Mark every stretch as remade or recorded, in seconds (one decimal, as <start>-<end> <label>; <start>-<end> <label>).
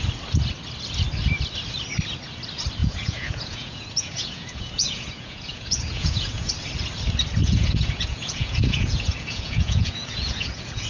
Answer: 0.0-2.8 recorded; 2.8-6.5 remade; 6.5-7.4 recorded; 7.4-10.9 remade